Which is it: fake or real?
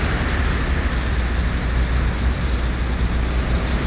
real